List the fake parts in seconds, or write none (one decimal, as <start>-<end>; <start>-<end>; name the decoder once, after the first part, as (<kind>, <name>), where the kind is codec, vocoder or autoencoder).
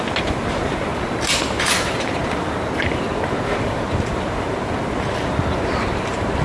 0.0-0.9 (vocoder, BigVGAN v2); 1.6-2.2; 6.0-6.4